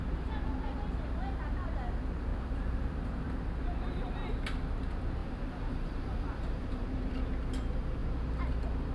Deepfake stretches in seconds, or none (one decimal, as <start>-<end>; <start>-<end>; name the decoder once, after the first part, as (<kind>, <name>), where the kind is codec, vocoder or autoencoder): 2.3-3.3 (vocoder, BigVGAN v2); 5.2-7.1